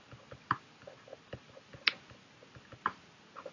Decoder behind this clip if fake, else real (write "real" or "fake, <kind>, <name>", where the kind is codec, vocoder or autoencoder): real